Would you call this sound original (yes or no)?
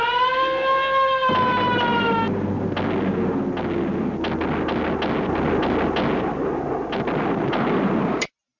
yes